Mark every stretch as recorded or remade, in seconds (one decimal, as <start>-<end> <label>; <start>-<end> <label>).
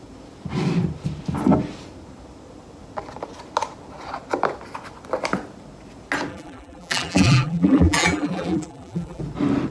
0.0-6.3 recorded; 6.3-9.2 remade; 9.2-9.7 recorded